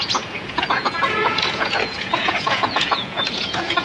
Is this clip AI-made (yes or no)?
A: yes